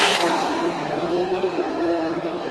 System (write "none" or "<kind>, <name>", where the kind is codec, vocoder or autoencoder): codec, SNAC